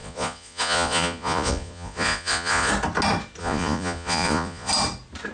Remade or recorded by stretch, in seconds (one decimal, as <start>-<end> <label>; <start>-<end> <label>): 0.0-2.7 remade; 2.7-3.4 recorded; 3.4-4.7 remade; 4.7-5.3 recorded